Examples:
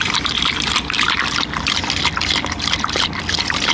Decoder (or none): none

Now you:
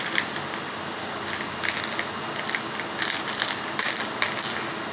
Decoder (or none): none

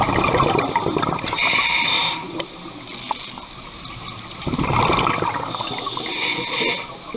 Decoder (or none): none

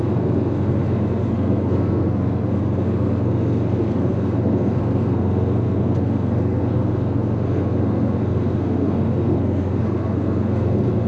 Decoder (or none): codec, SNAC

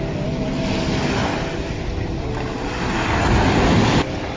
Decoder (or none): none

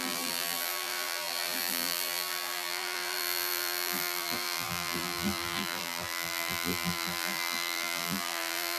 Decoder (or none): vocoder, BigVGAN v2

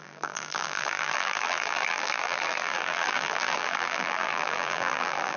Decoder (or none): vocoder, BigVGAN v2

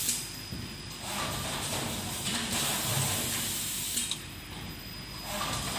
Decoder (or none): none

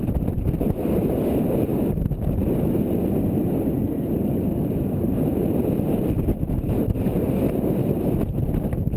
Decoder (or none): none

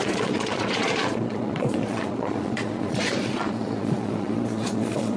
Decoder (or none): vocoder, Vocos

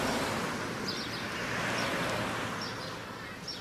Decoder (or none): none